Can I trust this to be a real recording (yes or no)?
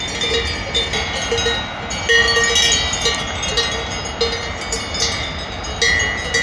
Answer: yes